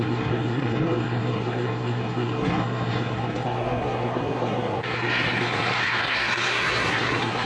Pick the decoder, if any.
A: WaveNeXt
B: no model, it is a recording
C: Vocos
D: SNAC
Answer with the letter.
D